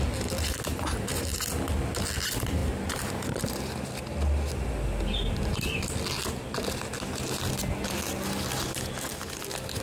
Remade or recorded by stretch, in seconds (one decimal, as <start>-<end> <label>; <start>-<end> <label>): 0.0-9.8 recorded